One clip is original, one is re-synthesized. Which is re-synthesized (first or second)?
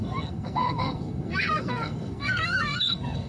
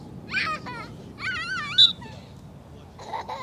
first